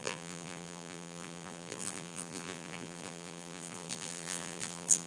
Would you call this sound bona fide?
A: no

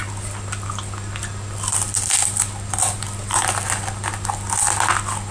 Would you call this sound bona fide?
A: yes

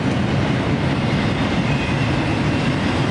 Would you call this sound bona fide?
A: yes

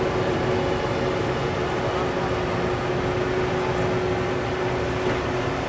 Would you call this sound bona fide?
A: yes